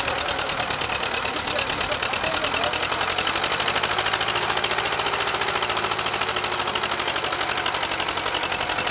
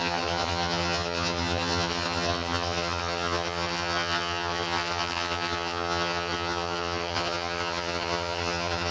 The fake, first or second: second